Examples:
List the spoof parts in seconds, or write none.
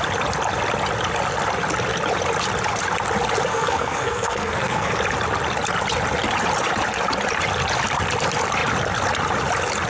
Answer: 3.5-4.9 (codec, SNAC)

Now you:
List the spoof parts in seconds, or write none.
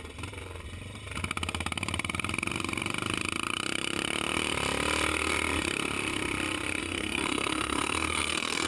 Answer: 6.8-8.7 (codec, SNAC)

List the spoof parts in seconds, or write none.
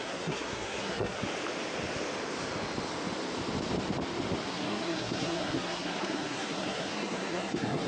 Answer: 0.0-1.2 (codec, SNAC); 4.5-7.9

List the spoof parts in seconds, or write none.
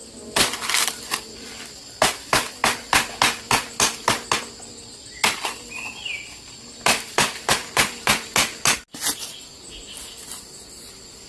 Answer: none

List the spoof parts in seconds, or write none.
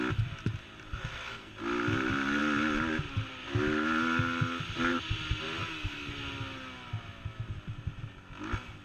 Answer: 0.9-1.5 (codec, SNAC); 5.6-6.1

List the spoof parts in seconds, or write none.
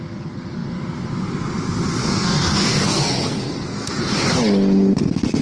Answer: 2.0-3.9 (codec, SNAC)